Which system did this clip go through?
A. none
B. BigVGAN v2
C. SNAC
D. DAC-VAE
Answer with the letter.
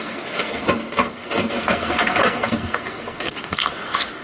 C